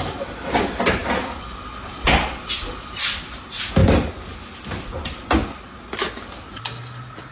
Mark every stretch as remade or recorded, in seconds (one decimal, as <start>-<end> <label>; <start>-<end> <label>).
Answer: 0.0-7.3 recorded